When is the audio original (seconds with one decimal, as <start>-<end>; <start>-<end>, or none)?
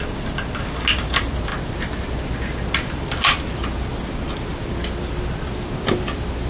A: 0.0-6.5